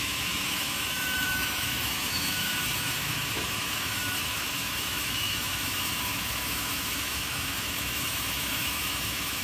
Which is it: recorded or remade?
remade